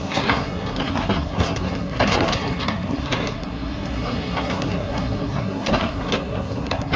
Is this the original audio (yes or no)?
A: no